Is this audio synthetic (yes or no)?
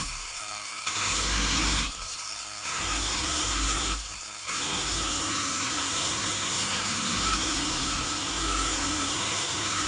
yes